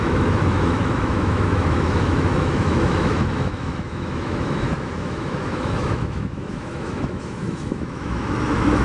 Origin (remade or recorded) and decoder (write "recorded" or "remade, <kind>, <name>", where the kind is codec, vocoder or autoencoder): remade, autoencoder, DAC-VAE